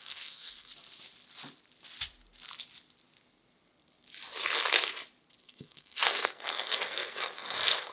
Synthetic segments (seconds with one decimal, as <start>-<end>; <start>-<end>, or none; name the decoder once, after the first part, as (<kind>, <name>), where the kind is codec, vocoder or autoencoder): 0.0-0.7 (codec, SNAC); 5.4-7.9